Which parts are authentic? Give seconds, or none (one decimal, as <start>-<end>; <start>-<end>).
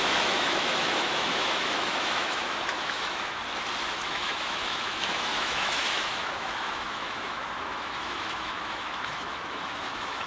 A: 3.4-3.9